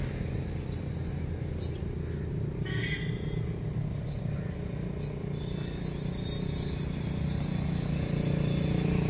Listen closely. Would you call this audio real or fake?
real